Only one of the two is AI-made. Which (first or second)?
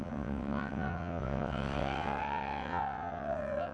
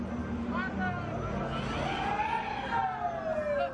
first